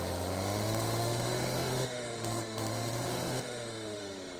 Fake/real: fake